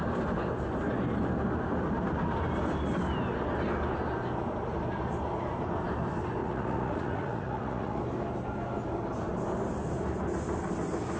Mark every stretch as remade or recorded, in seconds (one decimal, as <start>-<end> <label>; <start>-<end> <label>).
0.0-6.4 recorded; 6.4-8.0 remade; 8.0-11.2 recorded